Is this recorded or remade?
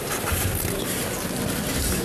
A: recorded